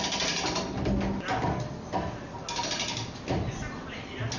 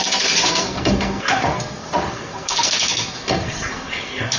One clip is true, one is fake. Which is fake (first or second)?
second